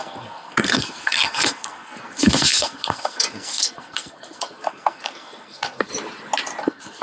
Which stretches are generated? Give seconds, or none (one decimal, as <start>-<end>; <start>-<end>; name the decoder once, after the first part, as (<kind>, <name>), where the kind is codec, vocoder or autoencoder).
0.0-5.9 (codec, SNAC); 6.6-7.0